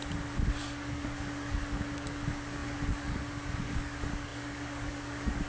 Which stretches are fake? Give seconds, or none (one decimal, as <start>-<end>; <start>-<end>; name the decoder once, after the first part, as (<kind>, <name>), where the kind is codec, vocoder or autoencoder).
0.6-5.5 (codec, DAC)